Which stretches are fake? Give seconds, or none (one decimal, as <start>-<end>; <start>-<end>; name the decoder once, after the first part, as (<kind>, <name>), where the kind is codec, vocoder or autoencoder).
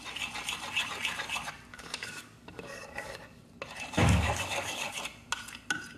1.7-3.4 (codec, DAC); 4.0-5.0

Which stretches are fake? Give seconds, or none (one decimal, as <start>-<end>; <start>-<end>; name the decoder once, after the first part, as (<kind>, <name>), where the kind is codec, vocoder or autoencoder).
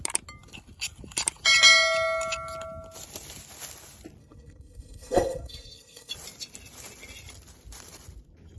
4.2-6.1 (codec, SNAC)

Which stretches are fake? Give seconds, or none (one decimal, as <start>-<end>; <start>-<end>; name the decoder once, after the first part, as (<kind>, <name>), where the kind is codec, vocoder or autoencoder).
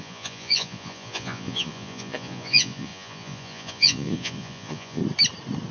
0.0-5.0 (vocoder, Vocos)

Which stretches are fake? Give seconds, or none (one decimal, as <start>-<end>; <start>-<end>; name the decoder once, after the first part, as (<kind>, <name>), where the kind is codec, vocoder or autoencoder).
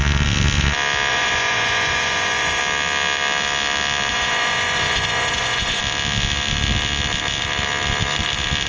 1.1-2.6 (vocoder, Vocos); 4.1-5.8